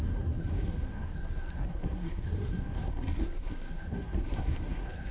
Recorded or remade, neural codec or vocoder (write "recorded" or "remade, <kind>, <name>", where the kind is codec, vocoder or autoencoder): remade, codec, SNAC